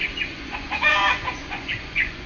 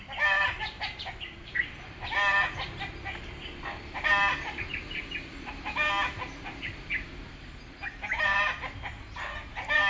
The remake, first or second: first